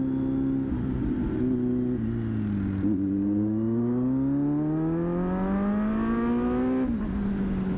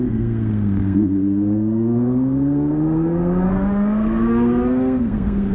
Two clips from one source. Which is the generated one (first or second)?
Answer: second